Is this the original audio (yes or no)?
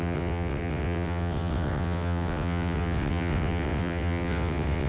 no